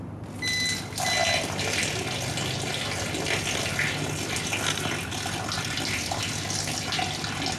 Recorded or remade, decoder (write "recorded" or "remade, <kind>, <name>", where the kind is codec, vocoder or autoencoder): recorded